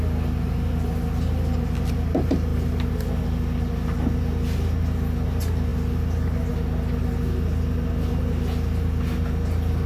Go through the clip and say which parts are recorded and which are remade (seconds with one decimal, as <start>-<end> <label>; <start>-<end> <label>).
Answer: 0.0-2.5 recorded; 2.5-3.1 remade; 3.1-5.7 recorded; 5.7-6.5 remade; 6.5-9.9 recorded